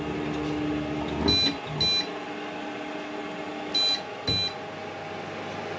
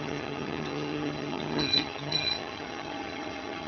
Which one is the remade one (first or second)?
second